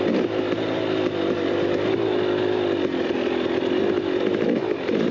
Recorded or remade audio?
recorded